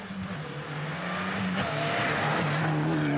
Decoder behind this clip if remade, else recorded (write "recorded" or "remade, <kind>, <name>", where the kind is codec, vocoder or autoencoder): recorded